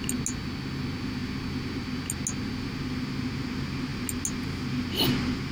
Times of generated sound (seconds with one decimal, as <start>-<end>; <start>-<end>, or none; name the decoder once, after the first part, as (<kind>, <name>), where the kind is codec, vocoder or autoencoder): none